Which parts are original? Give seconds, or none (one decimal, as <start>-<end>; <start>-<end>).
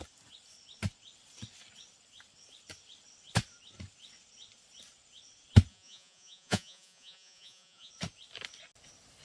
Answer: 0.0-5.7; 7.9-9.2